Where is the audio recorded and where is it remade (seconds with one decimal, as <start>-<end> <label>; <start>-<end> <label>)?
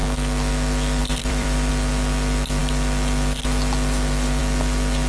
0.0-1.0 recorded; 1.0-1.7 remade; 1.7-5.1 recorded